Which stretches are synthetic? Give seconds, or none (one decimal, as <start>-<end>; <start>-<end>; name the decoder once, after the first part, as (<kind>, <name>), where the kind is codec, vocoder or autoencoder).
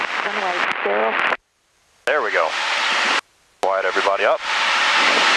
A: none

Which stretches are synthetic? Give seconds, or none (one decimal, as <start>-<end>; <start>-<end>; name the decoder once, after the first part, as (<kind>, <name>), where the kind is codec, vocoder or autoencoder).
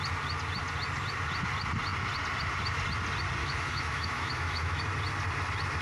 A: 3.4-4.8 (autoencoder, DAC-VAE)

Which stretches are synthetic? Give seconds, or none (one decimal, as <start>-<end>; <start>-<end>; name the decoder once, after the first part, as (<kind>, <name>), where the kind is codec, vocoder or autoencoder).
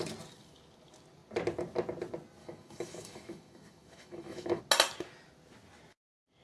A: 2.4-4.6 (autoencoder, DAC-VAE)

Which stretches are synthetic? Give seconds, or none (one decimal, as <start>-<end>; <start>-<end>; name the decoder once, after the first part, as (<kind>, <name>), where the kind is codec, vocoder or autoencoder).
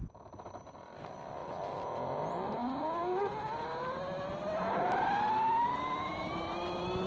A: none